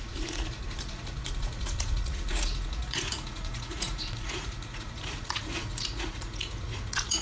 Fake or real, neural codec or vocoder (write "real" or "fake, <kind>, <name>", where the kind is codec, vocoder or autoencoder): fake, vocoder, Vocos